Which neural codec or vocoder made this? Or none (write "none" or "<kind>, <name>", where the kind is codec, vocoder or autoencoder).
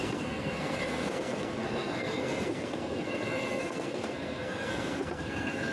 codec, SNAC